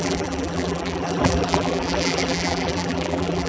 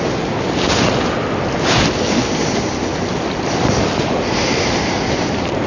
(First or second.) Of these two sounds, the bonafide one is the second